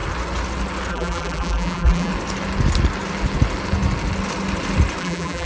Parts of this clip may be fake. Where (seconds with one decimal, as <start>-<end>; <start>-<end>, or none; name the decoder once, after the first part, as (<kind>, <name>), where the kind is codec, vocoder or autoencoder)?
0.9-2.1 (vocoder, BigVGAN v2); 5.0-5.5